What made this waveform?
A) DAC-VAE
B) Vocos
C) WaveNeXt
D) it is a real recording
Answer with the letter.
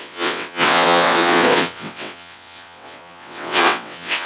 C